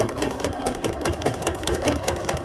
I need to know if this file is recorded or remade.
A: remade